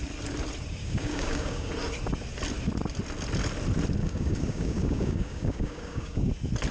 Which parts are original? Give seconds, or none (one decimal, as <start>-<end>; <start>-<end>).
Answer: 0.0-0.8; 1.7-4.0; 6.3-6.7